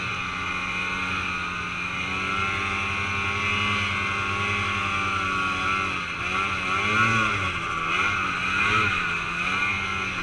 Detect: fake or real real